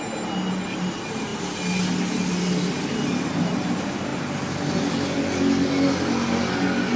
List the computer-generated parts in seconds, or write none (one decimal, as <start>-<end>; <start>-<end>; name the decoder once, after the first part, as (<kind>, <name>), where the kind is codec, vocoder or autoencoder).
none

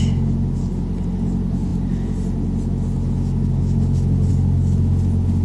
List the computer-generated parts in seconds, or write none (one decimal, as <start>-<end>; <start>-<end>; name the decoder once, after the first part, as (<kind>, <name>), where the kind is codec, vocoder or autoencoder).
none

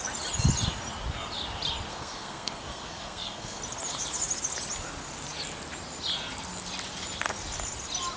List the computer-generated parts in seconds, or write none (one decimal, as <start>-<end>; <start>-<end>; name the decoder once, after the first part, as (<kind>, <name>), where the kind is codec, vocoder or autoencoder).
1.9-3.6 (codec, SNAC)

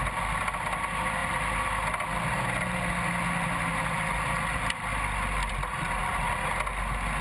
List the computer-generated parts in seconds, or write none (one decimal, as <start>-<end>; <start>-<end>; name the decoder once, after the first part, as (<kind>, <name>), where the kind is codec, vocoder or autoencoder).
none